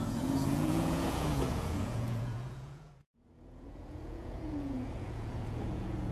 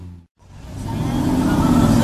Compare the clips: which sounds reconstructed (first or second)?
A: first